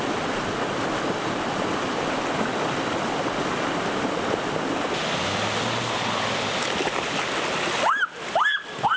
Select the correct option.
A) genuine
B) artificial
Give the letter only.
A